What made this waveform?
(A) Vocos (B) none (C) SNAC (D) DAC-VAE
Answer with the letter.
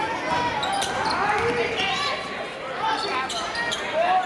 B